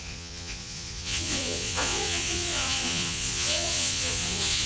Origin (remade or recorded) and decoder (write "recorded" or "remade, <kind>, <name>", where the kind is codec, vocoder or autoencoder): remade, vocoder, Vocos